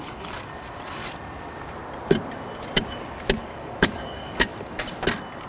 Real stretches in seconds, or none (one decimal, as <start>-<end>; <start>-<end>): 1.0-3.4; 4.5-5.5